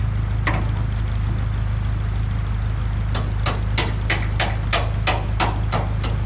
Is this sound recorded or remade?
recorded